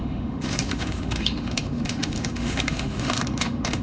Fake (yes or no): yes